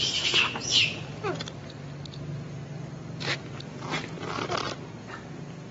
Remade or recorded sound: recorded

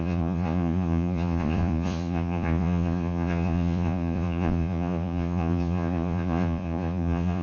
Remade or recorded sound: remade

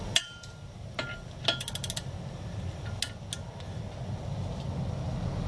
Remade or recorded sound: recorded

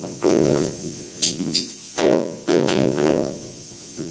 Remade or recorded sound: remade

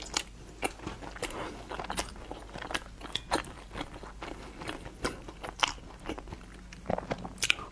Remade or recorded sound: recorded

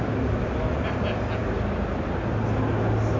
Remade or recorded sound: recorded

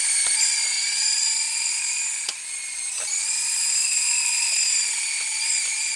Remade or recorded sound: recorded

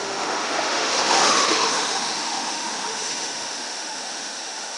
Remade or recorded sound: remade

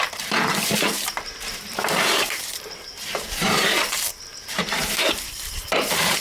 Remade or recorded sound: remade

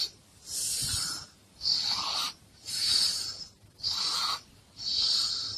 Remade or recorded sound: remade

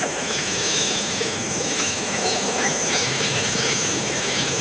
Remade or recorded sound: remade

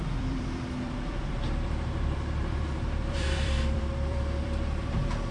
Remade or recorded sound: remade